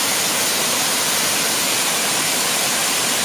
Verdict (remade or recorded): recorded